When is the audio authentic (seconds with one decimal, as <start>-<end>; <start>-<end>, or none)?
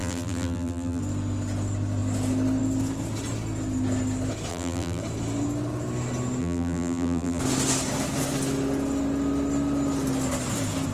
1.0-4.5; 5.0-6.4; 7.4-10.9